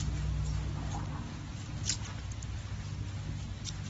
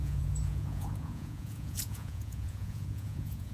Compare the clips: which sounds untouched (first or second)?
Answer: first